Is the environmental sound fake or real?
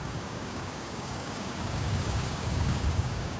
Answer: fake